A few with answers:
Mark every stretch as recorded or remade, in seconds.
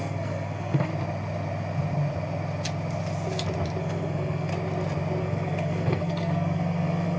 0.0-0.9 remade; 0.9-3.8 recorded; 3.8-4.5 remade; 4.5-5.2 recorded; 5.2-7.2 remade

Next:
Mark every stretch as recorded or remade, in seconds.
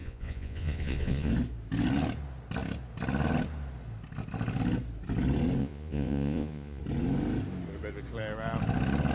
0.0-1.3 remade; 1.3-5.6 recorded; 5.6-6.8 remade; 6.8-9.1 recorded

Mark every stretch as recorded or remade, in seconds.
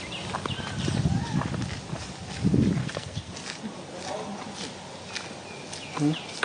0.0-2.8 recorded; 2.8-3.3 remade; 3.3-6.4 recorded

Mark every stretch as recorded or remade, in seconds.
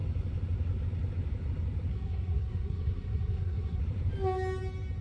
0.0-1.9 recorded; 1.9-3.8 remade; 3.8-5.0 recorded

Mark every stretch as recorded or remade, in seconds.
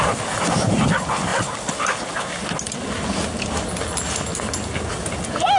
0.0-5.6 recorded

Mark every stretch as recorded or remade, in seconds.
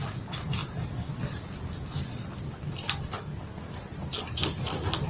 0.0-5.1 recorded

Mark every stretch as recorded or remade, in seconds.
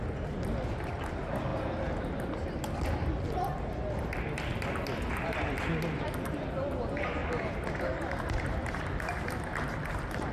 0.0-7.2 recorded; 7.2-7.8 remade; 7.8-10.3 recorded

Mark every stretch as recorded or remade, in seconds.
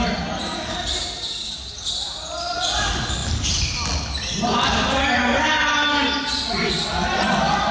0.0-7.7 recorded